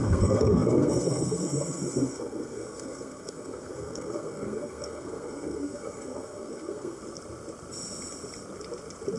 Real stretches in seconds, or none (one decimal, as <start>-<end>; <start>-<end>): 7.0-9.2